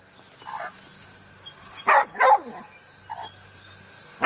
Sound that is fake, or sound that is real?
real